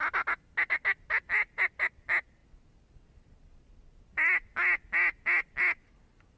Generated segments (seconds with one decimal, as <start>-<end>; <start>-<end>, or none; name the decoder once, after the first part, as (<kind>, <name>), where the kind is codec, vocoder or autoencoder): none